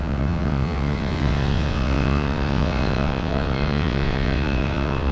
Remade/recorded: remade